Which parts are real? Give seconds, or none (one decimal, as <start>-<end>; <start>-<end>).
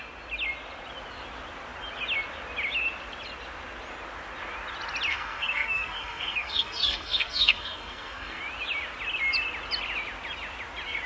0.0-5.1; 8.4-11.1